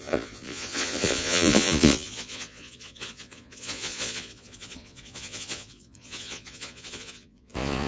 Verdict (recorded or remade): remade